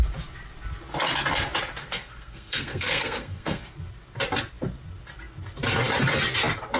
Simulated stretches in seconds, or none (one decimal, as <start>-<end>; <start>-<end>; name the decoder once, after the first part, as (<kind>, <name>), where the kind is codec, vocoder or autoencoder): 1.8-3.6 (codec, SNAC)